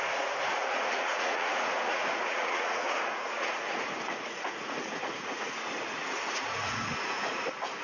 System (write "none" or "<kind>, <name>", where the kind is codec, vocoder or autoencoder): vocoder, Vocos